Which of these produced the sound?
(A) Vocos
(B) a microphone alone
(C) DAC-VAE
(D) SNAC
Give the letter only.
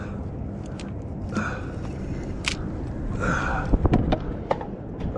B